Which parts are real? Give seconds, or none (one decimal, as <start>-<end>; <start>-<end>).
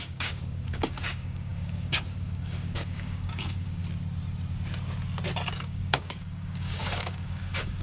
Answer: 3.8-5.5